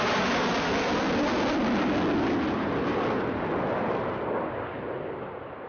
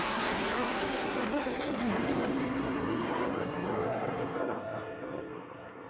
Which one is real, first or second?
first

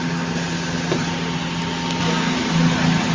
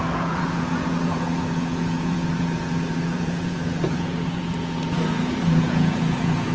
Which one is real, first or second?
first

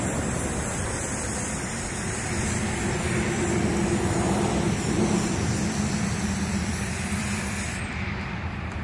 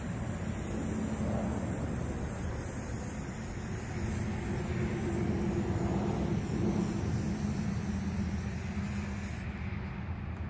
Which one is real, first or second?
second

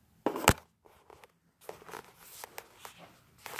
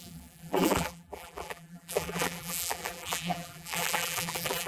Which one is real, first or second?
first